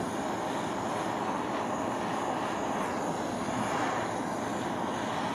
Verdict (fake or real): real